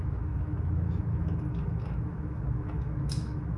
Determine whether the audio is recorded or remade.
remade